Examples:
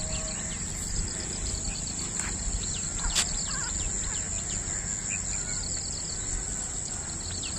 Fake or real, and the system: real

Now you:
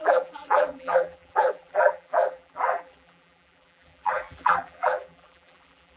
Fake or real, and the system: fake, vocoder, BigVGAN v2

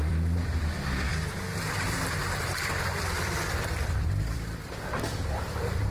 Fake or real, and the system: fake, vocoder, BigVGAN v2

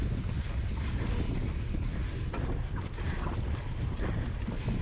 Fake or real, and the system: real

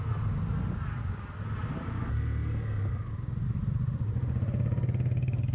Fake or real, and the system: real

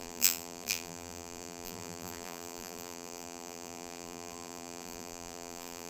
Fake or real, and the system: fake, vocoder, BigVGAN v2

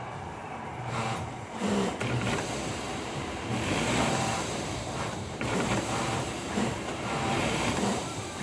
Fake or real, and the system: fake, vocoder, BigVGAN v2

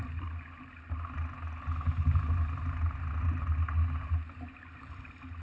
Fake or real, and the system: real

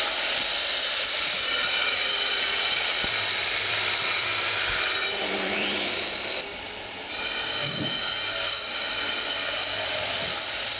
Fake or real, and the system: fake, vocoder, BigVGAN v2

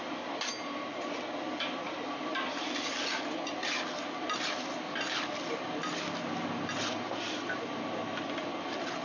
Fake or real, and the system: real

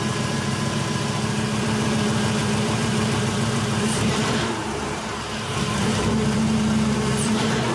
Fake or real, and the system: fake, vocoder, BigVGAN v2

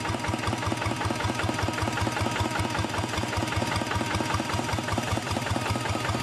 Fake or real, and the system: real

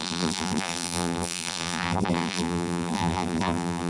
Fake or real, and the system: fake, vocoder, BigVGAN v2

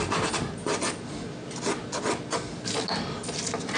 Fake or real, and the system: real